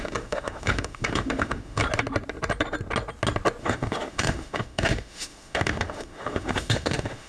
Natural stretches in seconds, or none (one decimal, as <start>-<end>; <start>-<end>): 1.8-3.6